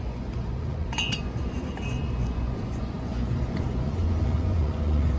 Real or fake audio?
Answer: fake